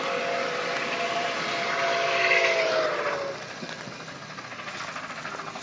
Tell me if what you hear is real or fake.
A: real